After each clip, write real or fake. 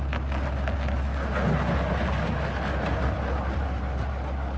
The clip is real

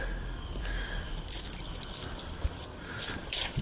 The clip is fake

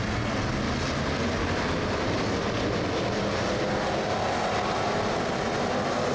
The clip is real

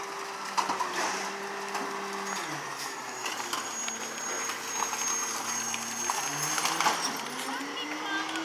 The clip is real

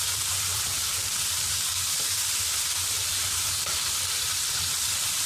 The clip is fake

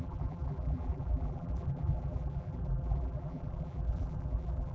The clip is fake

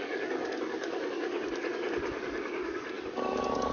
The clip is fake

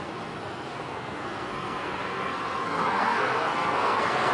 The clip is fake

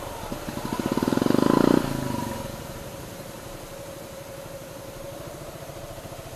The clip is real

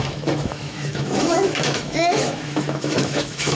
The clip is fake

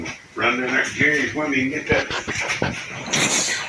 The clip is real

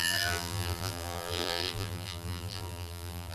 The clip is fake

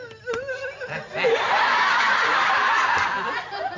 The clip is fake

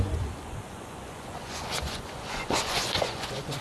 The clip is fake